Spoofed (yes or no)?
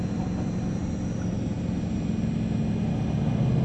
no